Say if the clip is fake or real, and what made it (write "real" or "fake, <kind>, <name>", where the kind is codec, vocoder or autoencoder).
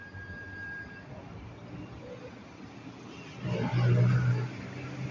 real